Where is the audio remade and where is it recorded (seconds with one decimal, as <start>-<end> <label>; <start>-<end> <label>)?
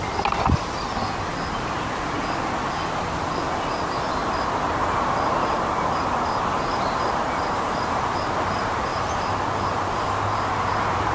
0.0-4.2 recorded; 4.2-7.9 remade; 7.9-8.9 recorded; 8.9-11.1 remade